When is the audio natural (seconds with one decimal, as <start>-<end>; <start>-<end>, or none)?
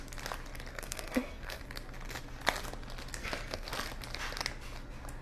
0.0-0.7; 1.6-3.2; 3.7-5.2